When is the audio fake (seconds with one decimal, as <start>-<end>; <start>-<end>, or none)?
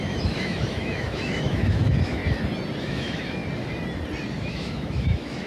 0.0-2.2; 2.8-3.4; 4.4-5.5